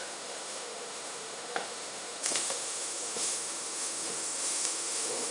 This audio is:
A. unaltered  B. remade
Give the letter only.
B